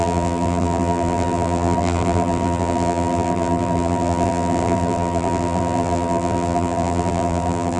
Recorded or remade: remade